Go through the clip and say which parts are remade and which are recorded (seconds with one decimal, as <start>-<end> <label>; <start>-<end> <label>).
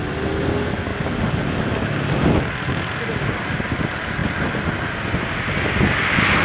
0.0-6.4 recorded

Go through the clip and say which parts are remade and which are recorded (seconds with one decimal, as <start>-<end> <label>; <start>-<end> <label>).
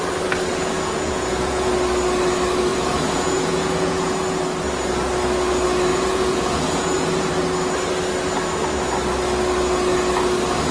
0.0-0.5 recorded; 0.5-1.7 remade; 1.7-2.7 recorded; 2.7-4.4 remade; 4.4-5.9 recorded; 5.9-7.3 remade; 7.3-10.7 recorded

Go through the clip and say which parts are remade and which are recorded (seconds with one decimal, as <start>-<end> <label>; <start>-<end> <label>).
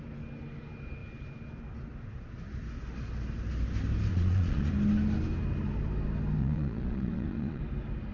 0.0-4.1 recorded; 4.1-4.7 remade; 4.7-6.4 recorded; 6.4-7.6 remade; 7.6-8.1 recorded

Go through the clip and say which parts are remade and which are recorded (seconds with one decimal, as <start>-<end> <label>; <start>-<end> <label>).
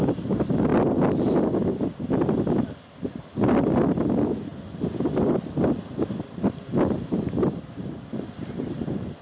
0.0-9.2 recorded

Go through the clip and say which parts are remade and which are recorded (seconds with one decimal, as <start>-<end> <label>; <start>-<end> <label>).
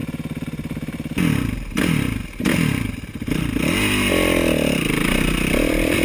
0.0-6.0 recorded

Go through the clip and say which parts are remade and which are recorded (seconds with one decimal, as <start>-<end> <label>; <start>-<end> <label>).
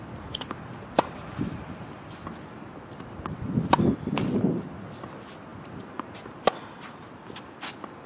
0.0-8.1 recorded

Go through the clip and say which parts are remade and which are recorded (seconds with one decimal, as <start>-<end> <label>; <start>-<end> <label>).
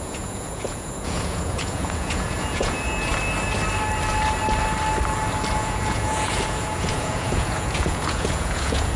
0.0-3.1 remade; 3.1-5.5 recorded; 5.5-9.0 remade